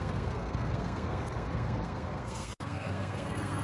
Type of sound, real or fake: fake